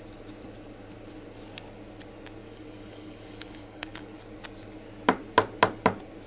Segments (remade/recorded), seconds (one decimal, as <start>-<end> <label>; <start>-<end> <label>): 0.0-2.4 recorded; 2.4-4.2 remade; 4.2-6.3 recorded